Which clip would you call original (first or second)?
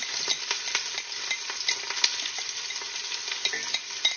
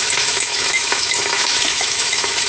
first